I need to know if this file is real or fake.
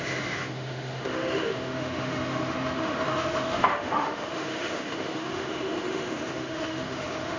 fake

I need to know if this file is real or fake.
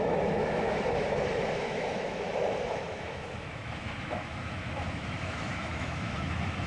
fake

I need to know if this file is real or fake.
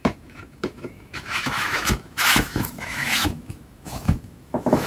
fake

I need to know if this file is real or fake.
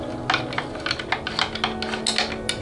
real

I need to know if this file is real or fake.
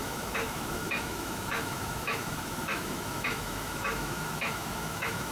fake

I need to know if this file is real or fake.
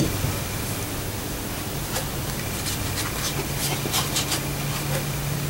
real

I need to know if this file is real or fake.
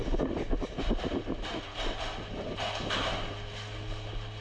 real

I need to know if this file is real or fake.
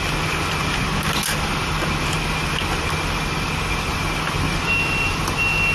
real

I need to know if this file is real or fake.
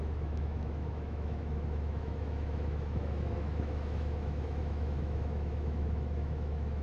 fake